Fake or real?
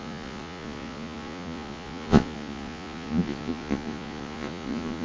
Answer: fake